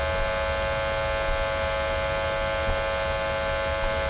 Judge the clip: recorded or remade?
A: recorded